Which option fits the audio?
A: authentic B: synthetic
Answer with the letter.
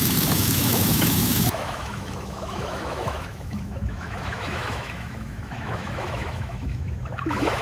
B